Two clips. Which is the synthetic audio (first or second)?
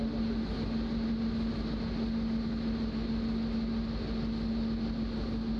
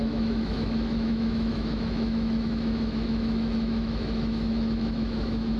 second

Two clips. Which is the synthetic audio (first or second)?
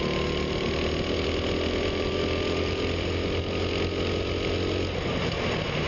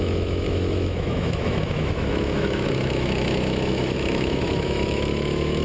second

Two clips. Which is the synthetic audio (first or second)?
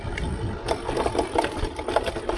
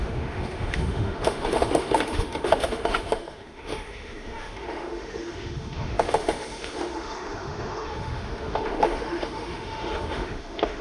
second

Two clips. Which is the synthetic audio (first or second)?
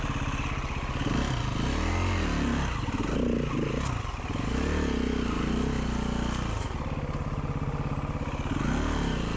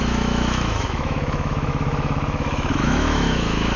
second